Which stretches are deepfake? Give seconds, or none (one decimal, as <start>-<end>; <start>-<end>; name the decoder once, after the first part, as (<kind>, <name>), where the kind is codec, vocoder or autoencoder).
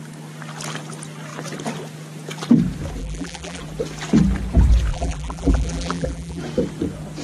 3.0-3.6 (vocoder, BigVGAN v2); 4.9-6.4